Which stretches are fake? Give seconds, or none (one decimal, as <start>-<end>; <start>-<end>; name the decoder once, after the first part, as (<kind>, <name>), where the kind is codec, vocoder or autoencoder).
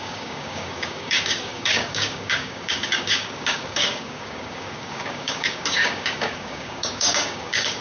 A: 0.0-7.8 (codec, DAC)